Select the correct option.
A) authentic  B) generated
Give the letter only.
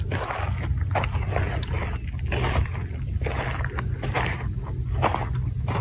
A